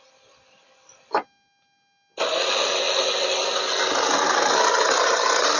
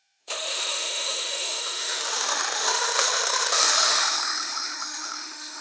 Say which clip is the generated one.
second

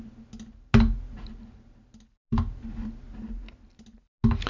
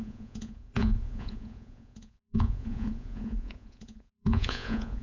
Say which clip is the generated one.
second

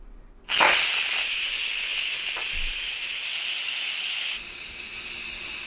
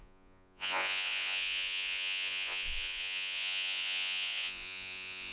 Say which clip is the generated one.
second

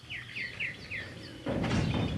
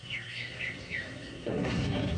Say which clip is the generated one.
second